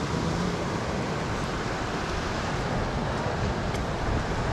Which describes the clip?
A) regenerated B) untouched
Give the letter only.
B